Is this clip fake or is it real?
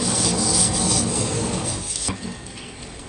fake